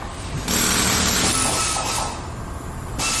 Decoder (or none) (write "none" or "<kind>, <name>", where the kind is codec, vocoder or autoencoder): none